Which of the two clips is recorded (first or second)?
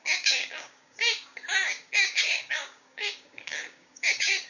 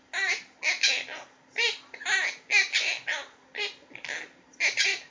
second